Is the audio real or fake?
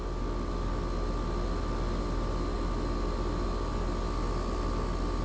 real